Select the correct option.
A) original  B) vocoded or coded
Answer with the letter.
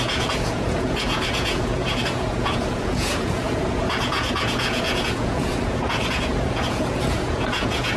B